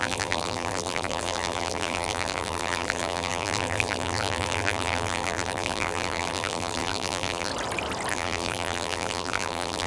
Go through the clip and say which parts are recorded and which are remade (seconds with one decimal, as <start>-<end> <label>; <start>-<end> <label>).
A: 0.0-7.5 remade; 7.5-8.1 recorded; 8.1-9.9 remade